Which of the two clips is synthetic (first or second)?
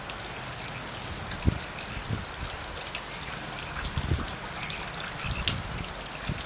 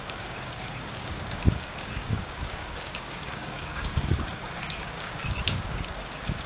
second